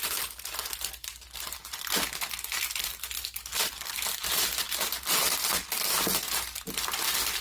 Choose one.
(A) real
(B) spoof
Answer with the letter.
A